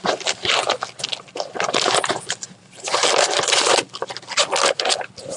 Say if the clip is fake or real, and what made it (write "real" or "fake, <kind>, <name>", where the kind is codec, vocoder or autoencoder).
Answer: real